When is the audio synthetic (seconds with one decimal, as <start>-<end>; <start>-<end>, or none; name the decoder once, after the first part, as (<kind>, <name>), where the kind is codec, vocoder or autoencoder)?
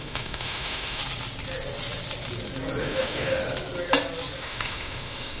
0.0-1.0 (autoencoder, DAC-VAE); 2.8-3.4; 4.4-5.4